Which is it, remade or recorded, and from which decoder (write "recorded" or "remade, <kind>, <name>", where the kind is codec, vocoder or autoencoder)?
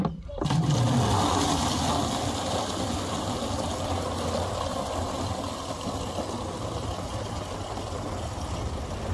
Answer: recorded